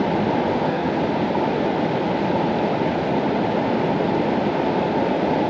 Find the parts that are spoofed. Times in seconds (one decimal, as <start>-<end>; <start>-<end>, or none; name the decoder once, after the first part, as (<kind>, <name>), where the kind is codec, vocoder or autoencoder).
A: 0.5-1.0 (codec, SNAC)